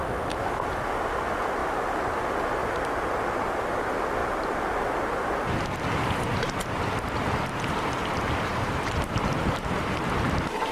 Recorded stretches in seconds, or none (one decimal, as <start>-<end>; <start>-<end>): 0.0-2.6; 3.1-8.0